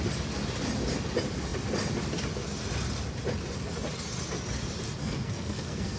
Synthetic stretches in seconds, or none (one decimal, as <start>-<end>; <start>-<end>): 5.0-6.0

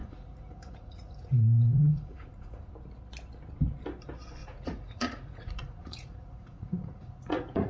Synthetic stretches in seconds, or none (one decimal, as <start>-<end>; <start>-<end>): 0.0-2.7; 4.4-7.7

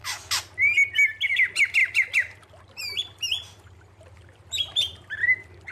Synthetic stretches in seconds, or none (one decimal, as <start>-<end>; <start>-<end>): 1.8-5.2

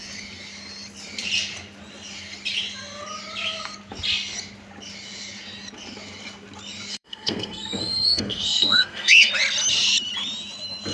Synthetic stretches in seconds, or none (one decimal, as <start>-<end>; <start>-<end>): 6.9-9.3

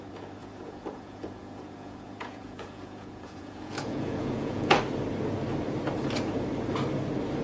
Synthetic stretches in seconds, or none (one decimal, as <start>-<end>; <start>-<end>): 0.4-4.8